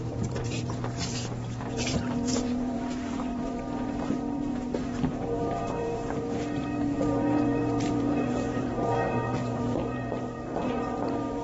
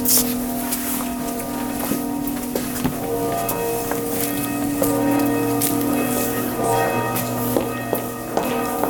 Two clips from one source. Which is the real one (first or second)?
second